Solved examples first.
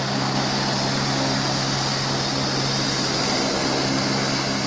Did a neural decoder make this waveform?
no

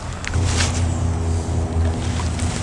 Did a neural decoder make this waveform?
no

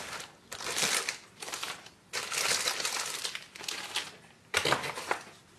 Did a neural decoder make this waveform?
no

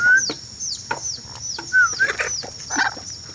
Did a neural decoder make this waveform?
no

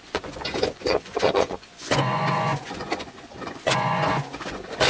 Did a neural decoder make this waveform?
yes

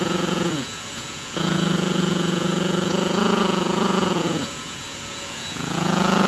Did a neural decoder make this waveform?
yes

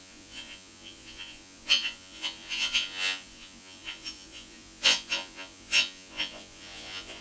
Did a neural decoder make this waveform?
yes